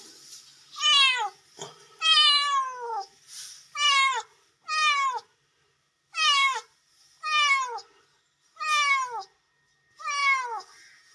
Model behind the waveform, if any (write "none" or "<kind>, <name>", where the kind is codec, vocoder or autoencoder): none